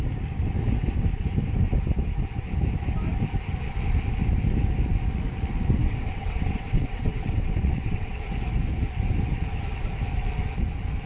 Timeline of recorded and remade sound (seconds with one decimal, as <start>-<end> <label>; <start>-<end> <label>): 0.0-5.8 recorded; 5.8-8.1 remade; 8.1-11.1 recorded